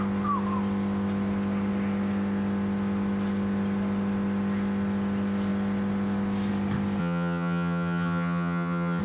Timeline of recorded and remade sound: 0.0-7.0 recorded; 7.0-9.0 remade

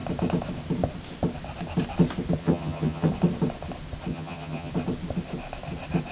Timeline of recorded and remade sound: 0.0-2.4 recorded; 2.4-3.1 remade; 3.1-4.1 recorded; 4.1-4.7 remade; 4.7-6.1 recorded

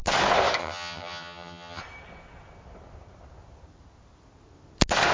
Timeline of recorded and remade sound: 0.0-0.6 recorded; 0.6-1.8 remade; 1.8-5.1 recorded

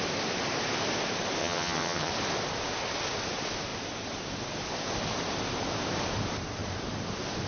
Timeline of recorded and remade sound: 0.0-1.4 recorded; 1.4-2.1 remade; 2.1-7.5 recorded

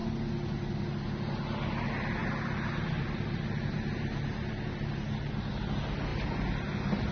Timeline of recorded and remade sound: 0.0-7.1 recorded